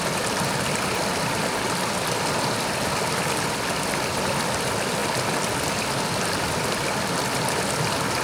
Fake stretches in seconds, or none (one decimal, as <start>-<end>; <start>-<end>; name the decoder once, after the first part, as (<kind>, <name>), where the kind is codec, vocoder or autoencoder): none